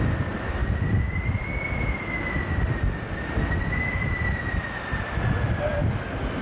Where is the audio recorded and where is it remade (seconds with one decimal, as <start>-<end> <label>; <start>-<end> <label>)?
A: 0.0-6.4 recorded